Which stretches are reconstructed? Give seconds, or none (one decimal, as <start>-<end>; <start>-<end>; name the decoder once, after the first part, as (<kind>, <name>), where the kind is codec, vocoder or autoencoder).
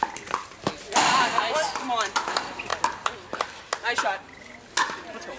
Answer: none